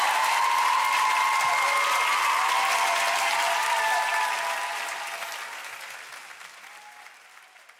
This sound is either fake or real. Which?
real